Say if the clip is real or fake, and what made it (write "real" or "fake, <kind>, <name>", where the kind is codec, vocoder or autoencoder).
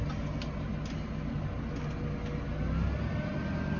real